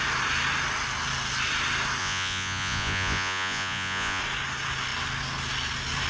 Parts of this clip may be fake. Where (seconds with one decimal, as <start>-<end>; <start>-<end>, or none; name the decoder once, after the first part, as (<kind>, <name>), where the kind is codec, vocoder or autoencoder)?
2.0-4.2 (vocoder, Vocos)